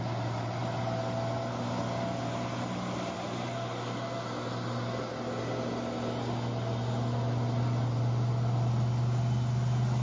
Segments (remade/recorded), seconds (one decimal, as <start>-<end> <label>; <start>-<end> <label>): 0.0-10.0 recorded